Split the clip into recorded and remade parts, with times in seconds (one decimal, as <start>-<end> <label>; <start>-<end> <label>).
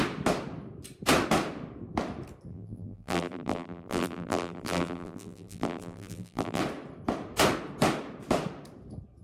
0.0-2.5 recorded; 2.5-6.6 remade; 6.6-9.2 recorded